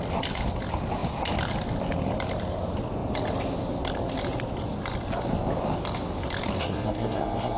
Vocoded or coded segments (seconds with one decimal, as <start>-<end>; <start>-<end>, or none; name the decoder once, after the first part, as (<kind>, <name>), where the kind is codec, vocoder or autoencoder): 6.6-7.6 (codec, SNAC)